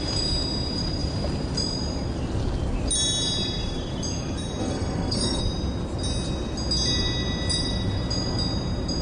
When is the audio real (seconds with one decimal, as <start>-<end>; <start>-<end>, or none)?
0.0-4.6; 5.4-9.0